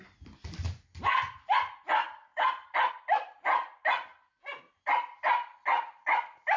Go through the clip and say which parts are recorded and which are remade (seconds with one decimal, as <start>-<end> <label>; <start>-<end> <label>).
0.0-6.6 recorded